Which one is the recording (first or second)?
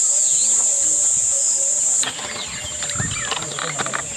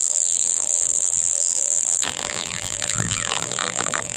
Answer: first